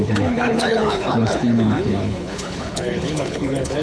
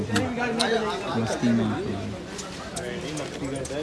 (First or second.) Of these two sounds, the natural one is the second